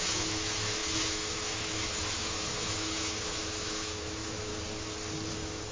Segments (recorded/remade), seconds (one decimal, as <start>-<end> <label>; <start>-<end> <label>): 0.0-4.5 remade; 4.5-5.3 recorded; 5.3-5.7 remade